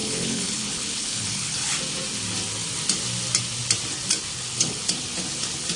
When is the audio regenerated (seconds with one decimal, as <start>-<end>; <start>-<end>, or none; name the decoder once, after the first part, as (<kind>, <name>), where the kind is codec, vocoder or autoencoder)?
0.0-1.8 (codec, HILCodec); 4.3-4.8